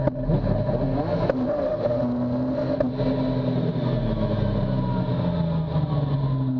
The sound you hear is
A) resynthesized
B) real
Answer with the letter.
B